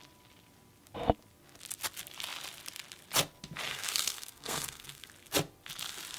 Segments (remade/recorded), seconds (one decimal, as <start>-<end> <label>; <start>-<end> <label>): 0.0-3.7 recorded; 3.7-5.1 remade; 5.1-6.2 recorded